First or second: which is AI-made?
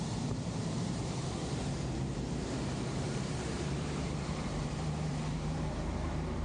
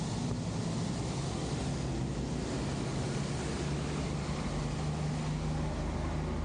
first